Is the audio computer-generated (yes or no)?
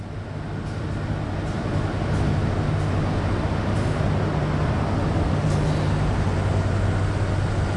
no